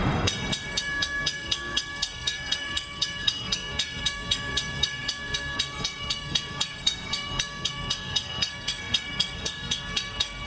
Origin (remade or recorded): remade